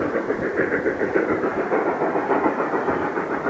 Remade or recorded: remade